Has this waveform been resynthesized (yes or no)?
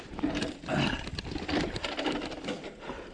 no